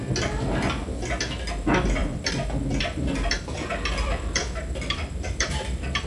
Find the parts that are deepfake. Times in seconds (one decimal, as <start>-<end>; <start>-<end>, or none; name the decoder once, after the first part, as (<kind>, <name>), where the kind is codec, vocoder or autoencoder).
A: 2.0-6.1 (vocoder, BigVGAN v2)